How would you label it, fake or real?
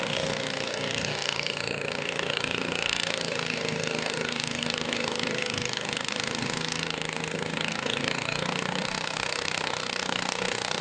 fake